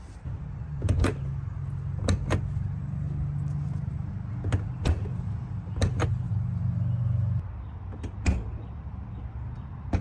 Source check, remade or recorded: recorded